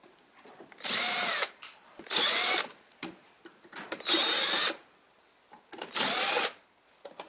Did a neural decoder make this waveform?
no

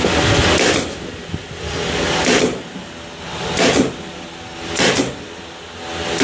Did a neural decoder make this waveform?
no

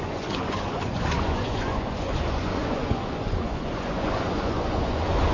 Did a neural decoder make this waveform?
yes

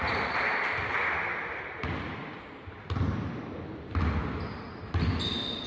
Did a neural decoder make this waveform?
no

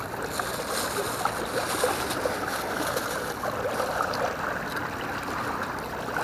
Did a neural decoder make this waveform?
no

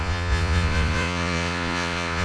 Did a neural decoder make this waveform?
yes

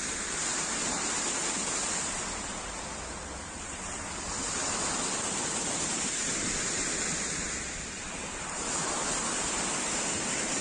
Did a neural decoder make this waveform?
no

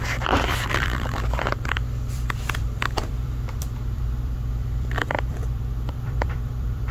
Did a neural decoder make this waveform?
yes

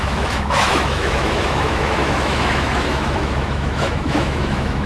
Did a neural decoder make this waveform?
yes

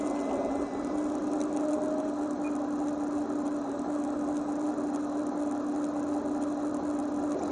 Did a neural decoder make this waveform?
no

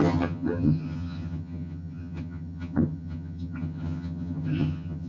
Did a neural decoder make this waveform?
yes